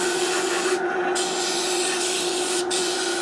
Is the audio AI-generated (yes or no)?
yes